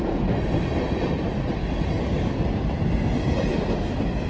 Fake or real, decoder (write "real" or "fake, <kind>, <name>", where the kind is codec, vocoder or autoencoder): real